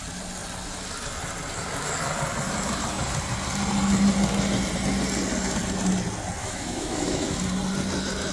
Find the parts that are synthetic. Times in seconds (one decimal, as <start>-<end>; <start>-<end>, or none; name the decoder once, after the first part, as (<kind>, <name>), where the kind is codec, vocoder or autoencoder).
6.4-7.4 (autoencoder, DAC-VAE)